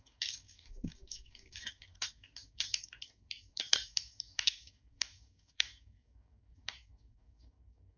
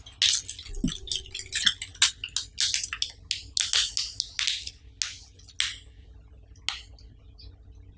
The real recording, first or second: second